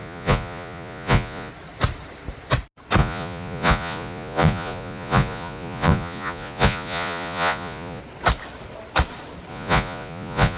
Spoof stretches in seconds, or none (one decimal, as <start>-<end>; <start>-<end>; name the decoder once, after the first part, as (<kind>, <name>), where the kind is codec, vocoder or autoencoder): 0.0-1.5 (vocoder, Vocos); 3.0-8.0; 9.5-10.6